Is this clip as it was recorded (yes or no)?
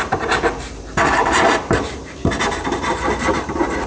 no